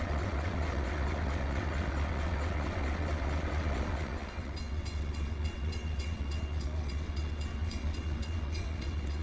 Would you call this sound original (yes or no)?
no